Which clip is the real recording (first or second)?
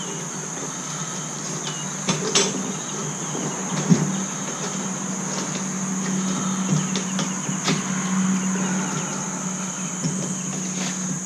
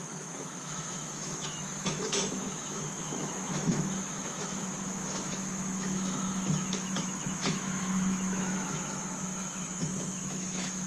first